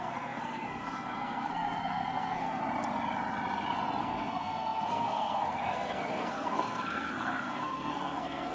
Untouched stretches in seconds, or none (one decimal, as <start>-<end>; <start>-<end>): 2.6-4.0